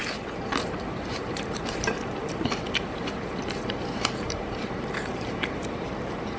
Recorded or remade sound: remade